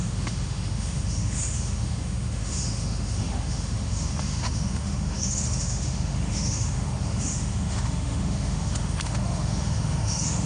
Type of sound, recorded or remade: remade